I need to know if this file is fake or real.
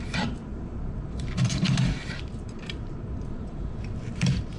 fake